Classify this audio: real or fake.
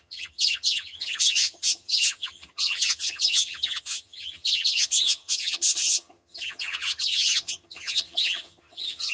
fake